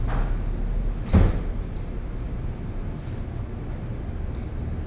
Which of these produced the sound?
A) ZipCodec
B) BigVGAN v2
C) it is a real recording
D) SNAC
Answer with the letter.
C